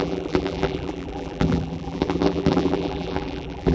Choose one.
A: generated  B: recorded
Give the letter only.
A